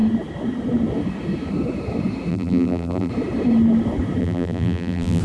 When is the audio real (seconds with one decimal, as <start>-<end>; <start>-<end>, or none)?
0.0-2.3; 3.1-4.2